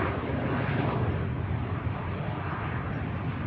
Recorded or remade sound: recorded